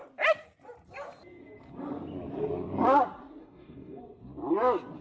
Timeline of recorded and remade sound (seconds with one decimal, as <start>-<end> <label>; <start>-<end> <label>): 0.0-3.4 recorded; 3.4-4.0 remade; 4.0-5.0 recorded